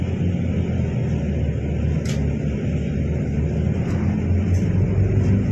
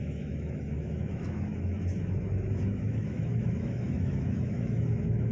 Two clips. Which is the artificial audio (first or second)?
second